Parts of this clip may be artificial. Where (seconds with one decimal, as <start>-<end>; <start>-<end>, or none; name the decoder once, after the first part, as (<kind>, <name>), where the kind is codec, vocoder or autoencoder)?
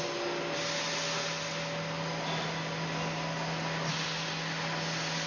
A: none